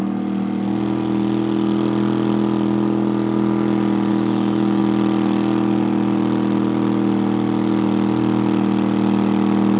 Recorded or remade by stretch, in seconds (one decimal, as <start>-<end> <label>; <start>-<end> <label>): 0.0-4.1 recorded; 4.1-4.8 remade; 4.8-9.8 recorded

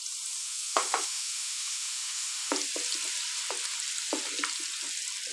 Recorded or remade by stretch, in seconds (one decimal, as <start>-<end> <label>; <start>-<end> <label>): 0.0-0.4 recorded; 0.4-2.5 remade; 2.5-5.3 recorded

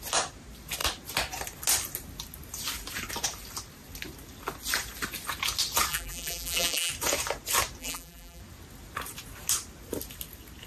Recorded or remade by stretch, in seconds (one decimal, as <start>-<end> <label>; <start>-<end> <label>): 0.0-5.9 recorded; 5.9-6.9 remade; 6.9-7.8 recorded; 7.8-8.4 remade; 8.4-10.7 recorded